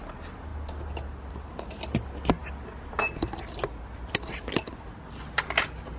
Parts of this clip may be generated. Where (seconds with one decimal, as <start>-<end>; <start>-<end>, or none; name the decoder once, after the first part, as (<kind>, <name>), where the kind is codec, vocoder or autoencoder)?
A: none